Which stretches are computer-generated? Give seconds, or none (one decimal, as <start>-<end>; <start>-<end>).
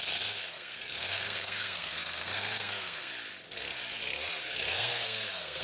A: 0.0-3.1; 4.4-5.6